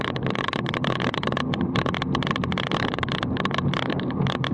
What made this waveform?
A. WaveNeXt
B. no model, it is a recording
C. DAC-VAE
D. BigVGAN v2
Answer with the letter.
B